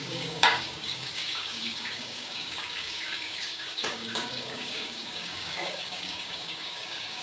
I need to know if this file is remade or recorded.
remade